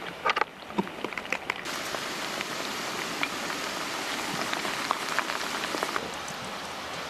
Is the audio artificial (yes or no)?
no